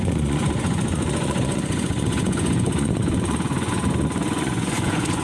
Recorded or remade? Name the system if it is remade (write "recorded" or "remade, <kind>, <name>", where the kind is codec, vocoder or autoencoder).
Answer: remade, vocoder, Vocos